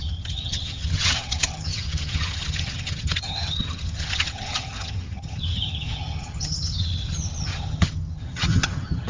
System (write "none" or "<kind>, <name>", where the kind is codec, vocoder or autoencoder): vocoder, HiFi-GAN